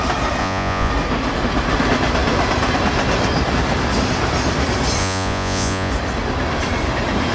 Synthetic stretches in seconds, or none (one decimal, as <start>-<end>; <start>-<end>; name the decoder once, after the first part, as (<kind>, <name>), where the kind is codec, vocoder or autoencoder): 0.4-0.9 (vocoder, Vocos); 5.0-5.9